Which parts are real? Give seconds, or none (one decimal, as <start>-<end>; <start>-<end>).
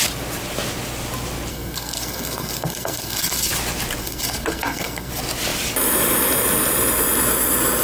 0.0-1.5; 3.5-4.0; 5.1-7.8